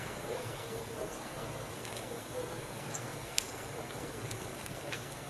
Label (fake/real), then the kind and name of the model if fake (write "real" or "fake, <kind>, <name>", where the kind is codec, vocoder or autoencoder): fake, codec, SNAC